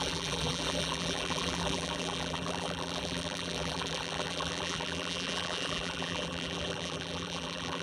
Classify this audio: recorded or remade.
remade